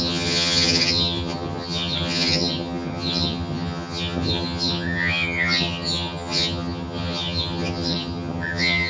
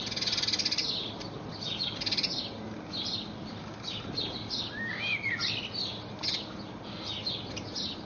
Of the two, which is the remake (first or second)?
first